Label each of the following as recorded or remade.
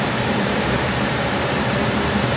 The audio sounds remade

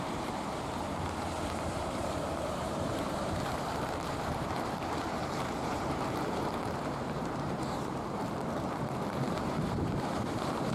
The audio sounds remade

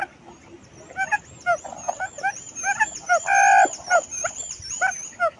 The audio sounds recorded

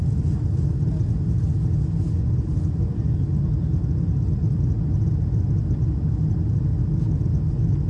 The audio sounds recorded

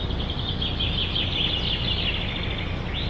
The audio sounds recorded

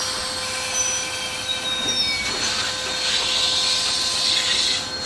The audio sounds recorded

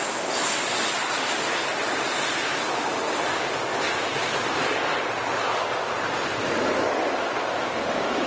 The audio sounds recorded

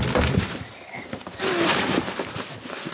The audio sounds remade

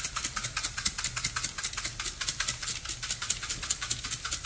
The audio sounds recorded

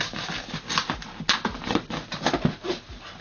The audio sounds recorded